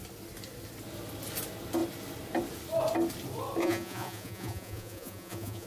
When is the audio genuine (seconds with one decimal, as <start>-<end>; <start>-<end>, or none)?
0.0-3.6